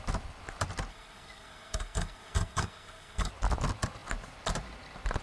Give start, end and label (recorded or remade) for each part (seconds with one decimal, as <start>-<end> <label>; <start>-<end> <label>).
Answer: 0.0-0.9 recorded; 0.9-3.3 remade; 3.3-5.2 recorded